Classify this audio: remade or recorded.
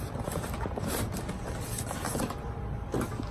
recorded